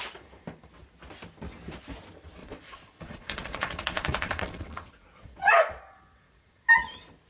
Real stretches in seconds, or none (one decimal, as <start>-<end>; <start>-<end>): 0.0-2.4; 6.7-7.3